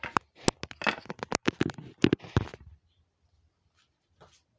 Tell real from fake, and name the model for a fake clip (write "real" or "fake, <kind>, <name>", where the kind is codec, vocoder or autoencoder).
real